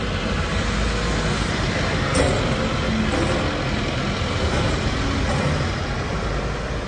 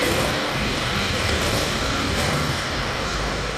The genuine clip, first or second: first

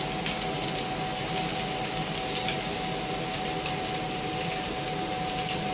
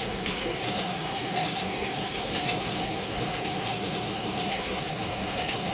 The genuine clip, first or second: first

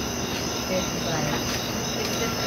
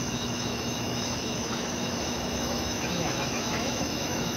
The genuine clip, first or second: first